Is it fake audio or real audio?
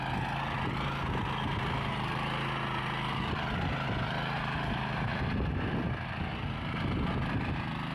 real